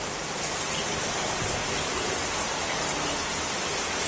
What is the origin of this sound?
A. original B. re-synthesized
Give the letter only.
B